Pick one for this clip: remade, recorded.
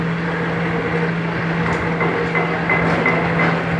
recorded